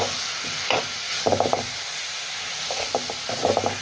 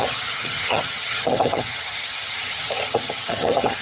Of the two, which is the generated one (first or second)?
second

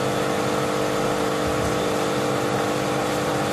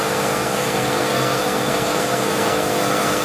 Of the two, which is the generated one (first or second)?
second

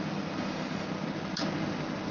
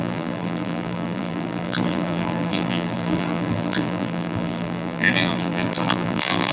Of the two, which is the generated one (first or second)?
second